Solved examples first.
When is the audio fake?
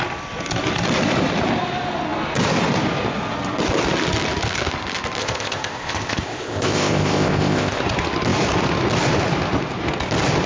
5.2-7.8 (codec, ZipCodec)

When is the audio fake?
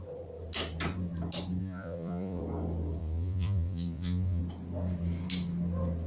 1.6-2.4 (vocoder, Vocos); 3.0-4.4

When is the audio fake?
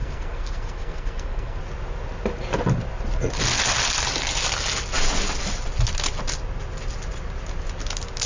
0.0-1.6 (codec, SNAC)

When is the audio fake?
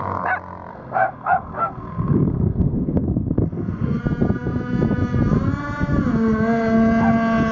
0.7-4.0 (codec, SNAC)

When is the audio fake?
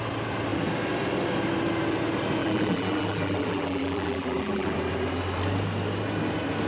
2.4-4.7 (vocoder, BigVGAN v2)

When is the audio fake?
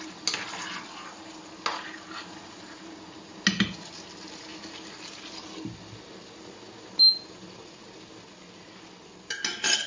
none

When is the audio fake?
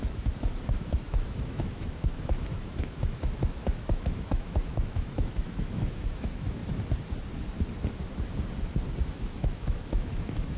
0.0-6.6 (autoencoder, DAC-VAE); 9.0-10.6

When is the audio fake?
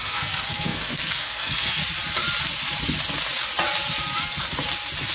0.0-1.8 (codec, SNAC)